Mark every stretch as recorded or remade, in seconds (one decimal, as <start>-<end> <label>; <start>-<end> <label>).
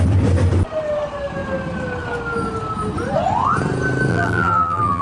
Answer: 0.0-4.1 recorded; 4.1-5.0 remade